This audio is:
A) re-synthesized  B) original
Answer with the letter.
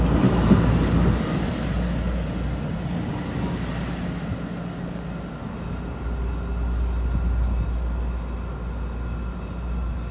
B